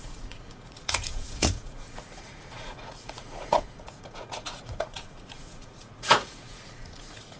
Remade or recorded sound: remade